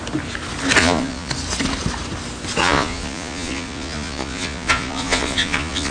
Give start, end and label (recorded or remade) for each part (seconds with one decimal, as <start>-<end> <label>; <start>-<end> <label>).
0.0-0.8 recorded; 0.8-1.3 remade; 1.3-2.6 recorded; 2.6-5.9 remade